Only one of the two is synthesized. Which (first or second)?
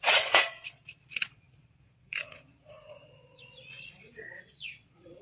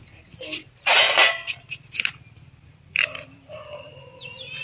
first